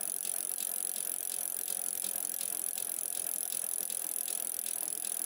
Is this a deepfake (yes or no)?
no